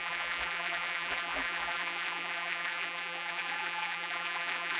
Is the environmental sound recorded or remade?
remade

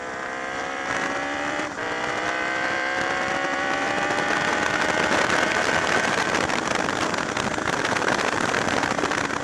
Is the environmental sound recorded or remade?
remade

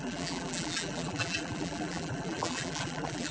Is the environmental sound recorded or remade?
remade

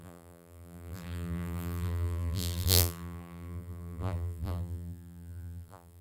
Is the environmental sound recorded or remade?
remade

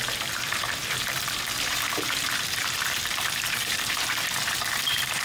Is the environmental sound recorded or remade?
remade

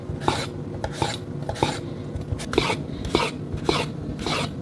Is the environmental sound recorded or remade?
remade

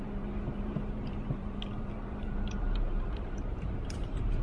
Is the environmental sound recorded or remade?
remade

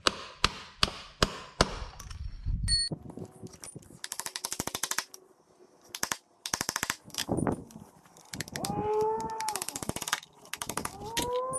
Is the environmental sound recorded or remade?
recorded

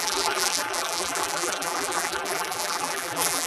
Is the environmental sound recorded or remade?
remade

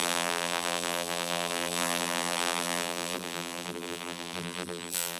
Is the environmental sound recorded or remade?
remade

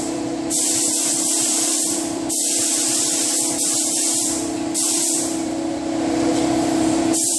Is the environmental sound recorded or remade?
remade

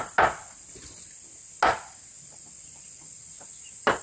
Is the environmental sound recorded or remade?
recorded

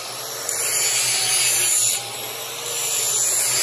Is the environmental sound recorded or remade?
remade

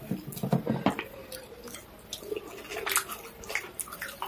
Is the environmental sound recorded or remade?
recorded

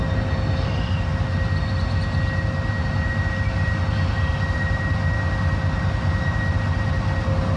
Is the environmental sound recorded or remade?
recorded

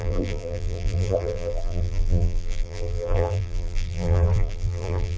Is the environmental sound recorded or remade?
remade